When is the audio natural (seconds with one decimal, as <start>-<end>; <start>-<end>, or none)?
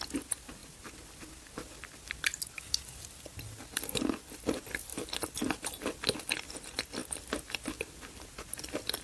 0.0-9.0